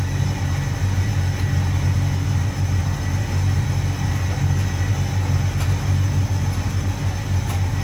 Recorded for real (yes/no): yes